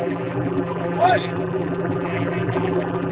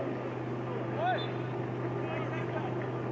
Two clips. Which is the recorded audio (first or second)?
second